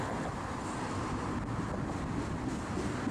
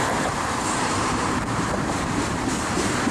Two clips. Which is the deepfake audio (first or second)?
second